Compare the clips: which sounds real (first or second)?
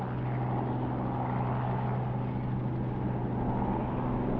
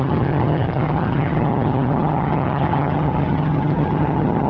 first